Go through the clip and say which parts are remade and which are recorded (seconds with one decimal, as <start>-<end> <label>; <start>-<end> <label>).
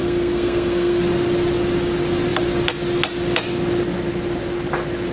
0.0-1.0 remade; 1.0-5.1 recorded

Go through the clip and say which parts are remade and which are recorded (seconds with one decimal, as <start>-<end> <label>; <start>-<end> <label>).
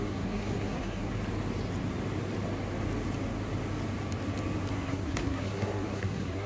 0.0-1.1 remade; 1.1-4.7 recorded; 4.7-6.5 remade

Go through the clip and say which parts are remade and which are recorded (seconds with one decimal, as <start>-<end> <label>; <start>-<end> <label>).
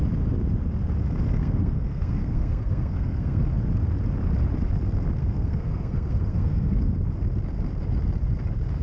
0.0-1.4 recorded; 1.4-3.4 remade; 3.4-5.2 recorded; 5.2-6.8 remade; 6.8-8.8 recorded